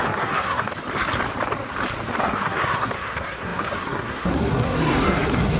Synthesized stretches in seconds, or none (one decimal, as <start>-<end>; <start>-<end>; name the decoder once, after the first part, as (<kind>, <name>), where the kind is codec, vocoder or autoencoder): 0.0-0.7 (codec, SNAC); 2.2-5.6